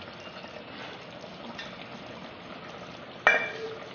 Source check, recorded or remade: recorded